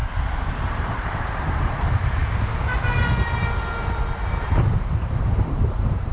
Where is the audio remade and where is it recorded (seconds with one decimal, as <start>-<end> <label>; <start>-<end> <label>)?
0.0-2.2 remade; 2.2-4.2 recorded; 4.2-6.1 remade